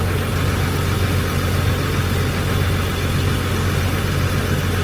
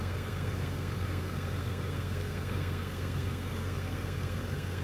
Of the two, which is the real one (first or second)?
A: first